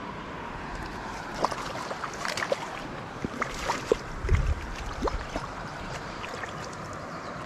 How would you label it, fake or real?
fake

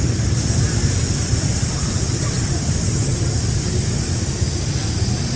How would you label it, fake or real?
real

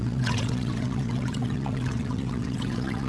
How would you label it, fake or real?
fake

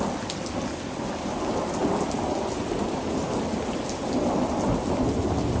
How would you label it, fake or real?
real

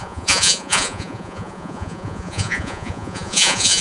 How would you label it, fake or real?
fake